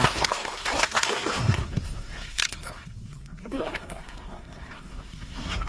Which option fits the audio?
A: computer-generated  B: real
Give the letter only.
A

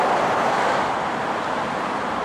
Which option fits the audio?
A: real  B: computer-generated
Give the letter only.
B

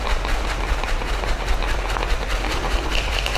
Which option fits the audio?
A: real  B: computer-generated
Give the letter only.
B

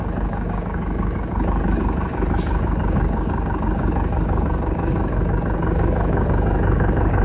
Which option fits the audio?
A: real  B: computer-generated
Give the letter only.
B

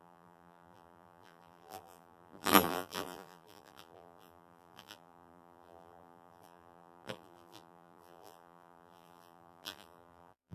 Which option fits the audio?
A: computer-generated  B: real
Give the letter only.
A